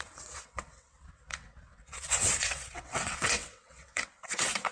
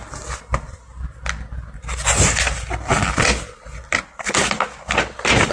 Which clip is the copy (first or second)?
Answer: first